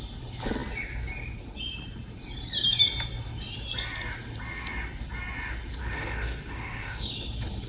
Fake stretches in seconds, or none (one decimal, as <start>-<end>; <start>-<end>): 5.8-7.1